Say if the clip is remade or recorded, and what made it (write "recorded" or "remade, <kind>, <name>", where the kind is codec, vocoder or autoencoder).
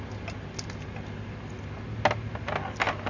recorded